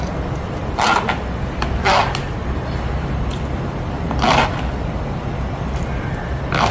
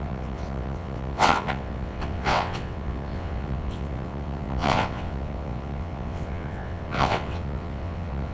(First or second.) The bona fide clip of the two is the first